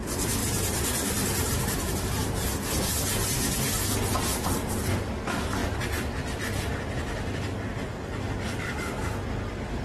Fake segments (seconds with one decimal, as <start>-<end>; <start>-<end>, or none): 0.4-1.5; 5.6-6.5